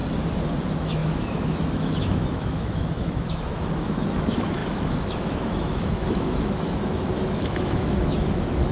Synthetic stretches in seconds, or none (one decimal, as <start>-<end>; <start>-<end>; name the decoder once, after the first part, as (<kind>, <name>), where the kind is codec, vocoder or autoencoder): 0.6-8.7 (autoencoder, DAC-VAE)